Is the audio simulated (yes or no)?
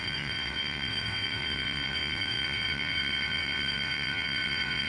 yes